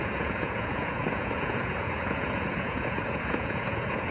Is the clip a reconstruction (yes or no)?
yes